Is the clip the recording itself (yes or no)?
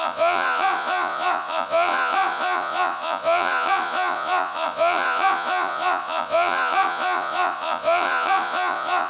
no